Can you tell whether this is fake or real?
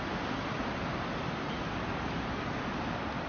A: real